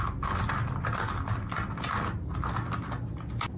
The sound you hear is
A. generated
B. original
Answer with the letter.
B